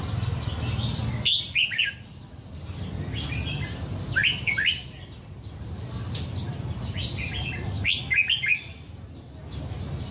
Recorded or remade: recorded